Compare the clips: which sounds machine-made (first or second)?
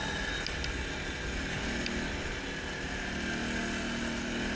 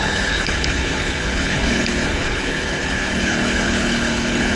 second